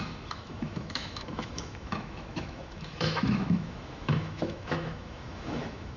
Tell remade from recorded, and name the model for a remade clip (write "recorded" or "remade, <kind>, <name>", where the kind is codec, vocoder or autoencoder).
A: remade, autoencoder, DAC-VAE